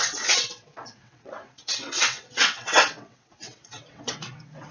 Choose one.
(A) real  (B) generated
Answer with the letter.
B